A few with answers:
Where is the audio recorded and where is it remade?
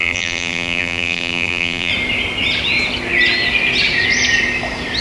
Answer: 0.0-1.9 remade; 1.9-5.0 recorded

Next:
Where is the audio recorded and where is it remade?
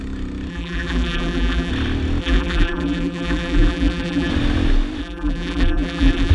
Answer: 0.0-0.5 recorded; 0.5-1.7 remade; 1.7-2.2 recorded; 2.2-4.3 remade; 4.3-5.0 recorded; 5.0-6.3 remade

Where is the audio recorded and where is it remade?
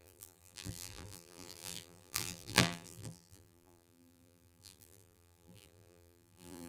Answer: 0.0-6.7 remade